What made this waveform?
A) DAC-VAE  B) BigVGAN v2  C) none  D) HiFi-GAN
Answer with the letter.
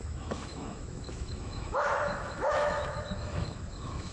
A